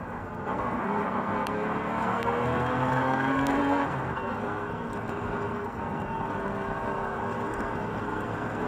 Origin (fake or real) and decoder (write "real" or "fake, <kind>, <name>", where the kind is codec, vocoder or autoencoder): fake, codec, SNAC